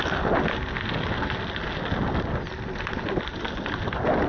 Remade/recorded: recorded